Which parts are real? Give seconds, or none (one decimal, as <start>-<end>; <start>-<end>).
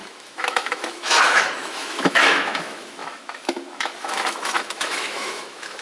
none